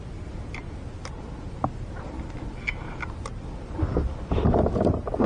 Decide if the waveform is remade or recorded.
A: recorded